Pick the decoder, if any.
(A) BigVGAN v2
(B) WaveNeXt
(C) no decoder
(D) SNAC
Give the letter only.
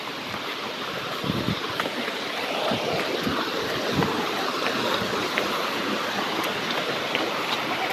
A